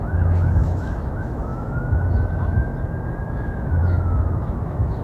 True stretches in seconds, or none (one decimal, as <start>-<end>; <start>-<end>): 2.7-3.2

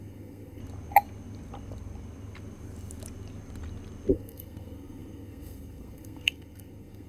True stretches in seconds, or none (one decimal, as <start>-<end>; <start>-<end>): 0.6-4.1